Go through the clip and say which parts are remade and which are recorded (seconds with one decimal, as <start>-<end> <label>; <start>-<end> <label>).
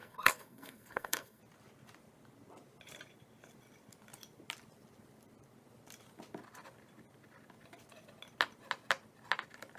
0.0-1.4 remade; 1.4-9.8 recorded